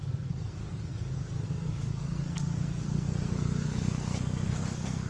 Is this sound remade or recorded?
remade